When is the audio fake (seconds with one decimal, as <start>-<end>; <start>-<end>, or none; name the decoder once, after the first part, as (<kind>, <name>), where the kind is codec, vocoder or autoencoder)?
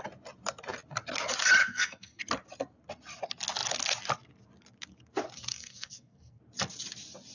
1.6-2.2 (codec, SNAC); 5.5-6.4